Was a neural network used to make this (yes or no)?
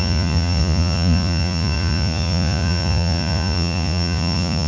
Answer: yes